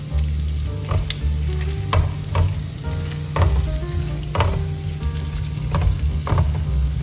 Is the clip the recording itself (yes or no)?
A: yes